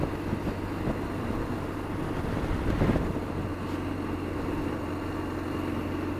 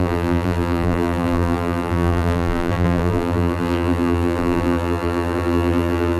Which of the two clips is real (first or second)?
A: first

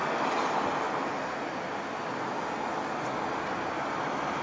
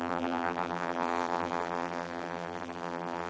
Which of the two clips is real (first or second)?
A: first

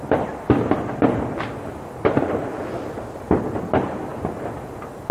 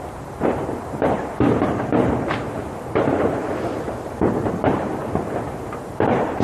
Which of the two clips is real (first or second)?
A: first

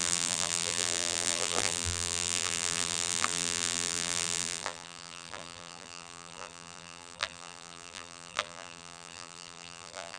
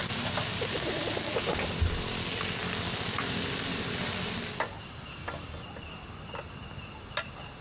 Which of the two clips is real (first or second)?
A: second